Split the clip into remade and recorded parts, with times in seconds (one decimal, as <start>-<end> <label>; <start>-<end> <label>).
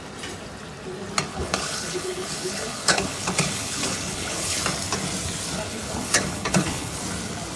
0.0-1.3 recorded; 1.3-4.6 remade; 4.6-5.7 recorded; 5.7-7.0 remade; 7.0-7.6 recorded